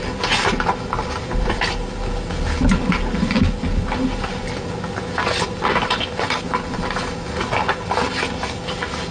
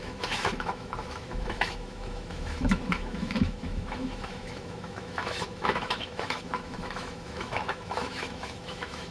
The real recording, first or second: first